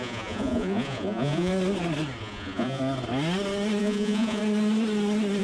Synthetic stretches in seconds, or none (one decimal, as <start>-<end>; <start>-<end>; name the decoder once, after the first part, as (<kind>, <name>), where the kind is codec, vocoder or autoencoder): 0.0-1.5 (vocoder, Vocos); 2.2-2.8; 3.8-4.4